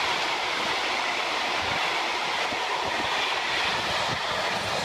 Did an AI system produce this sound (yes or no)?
no